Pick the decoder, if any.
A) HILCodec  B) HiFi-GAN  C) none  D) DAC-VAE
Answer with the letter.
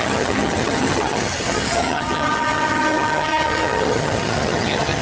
B